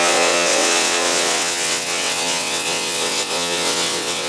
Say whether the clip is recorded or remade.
remade